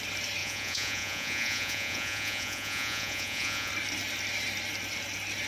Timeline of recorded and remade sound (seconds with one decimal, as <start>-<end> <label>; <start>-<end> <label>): 0.0-0.4 recorded; 0.4-3.7 remade; 3.7-5.5 recorded